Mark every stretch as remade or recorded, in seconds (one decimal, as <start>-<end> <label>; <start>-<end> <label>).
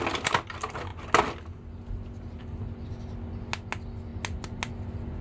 0.0-5.2 recorded